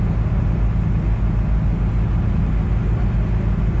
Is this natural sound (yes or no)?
yes